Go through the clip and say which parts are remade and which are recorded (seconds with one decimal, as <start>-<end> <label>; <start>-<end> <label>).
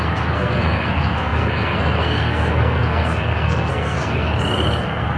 0.0-4.3 remade; 4.3-4.8 recorded; 4.8-5.2 remade